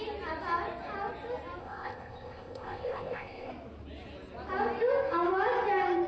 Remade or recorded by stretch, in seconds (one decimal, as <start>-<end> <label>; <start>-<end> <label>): 0.0-1.6 recorded; 1.6-3.5 remade; 3.5-6.1 recorded